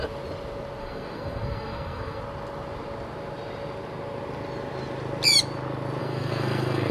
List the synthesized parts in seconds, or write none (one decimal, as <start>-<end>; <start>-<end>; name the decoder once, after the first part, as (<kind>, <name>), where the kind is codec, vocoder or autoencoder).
0.8-2.2 (codec, SNAC); 6.0-6.9